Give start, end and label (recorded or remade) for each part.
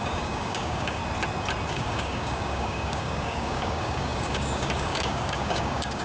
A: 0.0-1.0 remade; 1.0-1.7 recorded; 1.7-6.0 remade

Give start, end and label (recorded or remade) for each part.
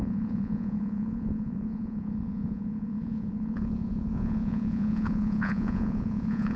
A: 0.0-6.6 remade